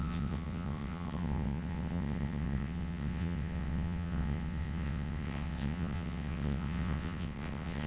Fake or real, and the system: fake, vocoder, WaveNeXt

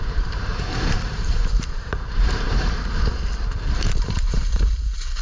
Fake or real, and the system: fake, vocoder, BigVGAN v2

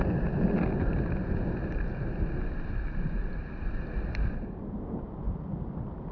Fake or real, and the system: real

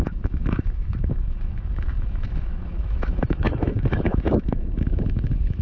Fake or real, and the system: fake, autoencoder, DAC-VAE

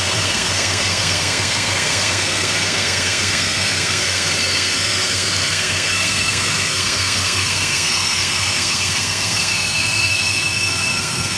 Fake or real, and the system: fake, codec, SNAC